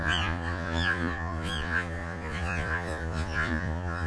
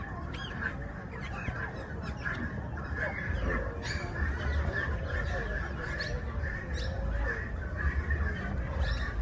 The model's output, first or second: first